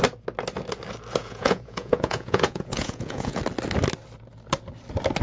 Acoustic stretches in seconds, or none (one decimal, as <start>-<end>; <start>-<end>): 0.0-1.2; 3.4-5.2